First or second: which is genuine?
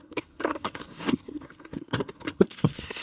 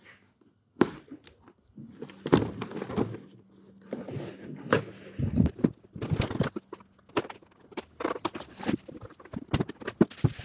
second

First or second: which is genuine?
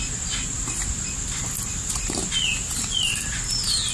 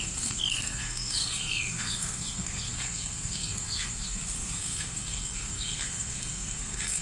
first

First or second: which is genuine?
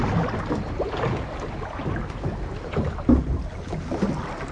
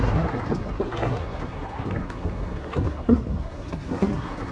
first